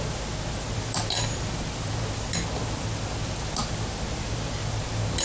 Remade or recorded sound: recorded